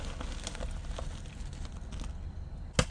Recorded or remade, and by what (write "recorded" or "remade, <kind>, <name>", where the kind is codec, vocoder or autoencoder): recorded